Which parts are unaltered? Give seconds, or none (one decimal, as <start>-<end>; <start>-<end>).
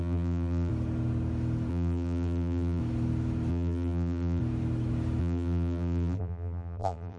0.7-1.7; 2.8-3.5; 4.4-5.2